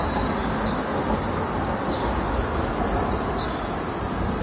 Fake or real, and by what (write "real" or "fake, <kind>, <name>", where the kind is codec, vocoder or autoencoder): real